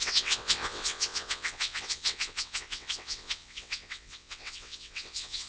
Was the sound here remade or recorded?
remade